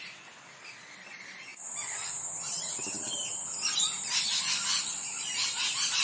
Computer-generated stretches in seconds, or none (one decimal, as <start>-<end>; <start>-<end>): none